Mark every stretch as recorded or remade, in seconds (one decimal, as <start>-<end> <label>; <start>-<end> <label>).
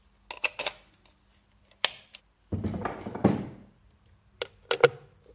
0.0-1.3 recorded; 1.3-4.5 remade; 4.5-5.3 recorded